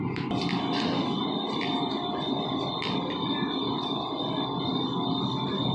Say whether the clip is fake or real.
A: real